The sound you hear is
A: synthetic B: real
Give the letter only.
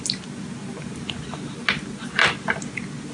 B